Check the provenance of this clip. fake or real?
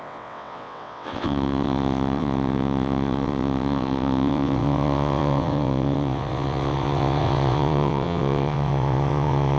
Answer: fake